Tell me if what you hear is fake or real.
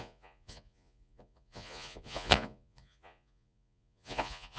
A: fake